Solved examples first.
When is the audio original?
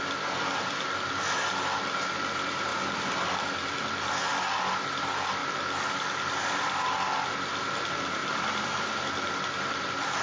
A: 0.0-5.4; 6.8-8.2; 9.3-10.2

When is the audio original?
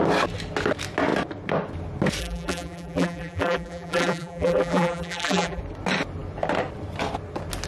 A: 0.0-2.2; 5.6-7.7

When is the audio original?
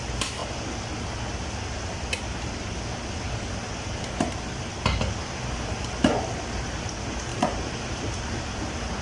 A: 0.0-7.3; 8.0-9.0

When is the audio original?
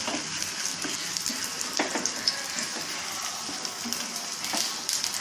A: 0.7-1.3